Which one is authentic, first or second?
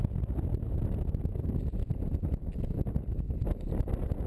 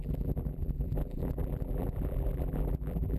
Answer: first